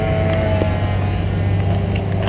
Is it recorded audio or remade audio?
recorded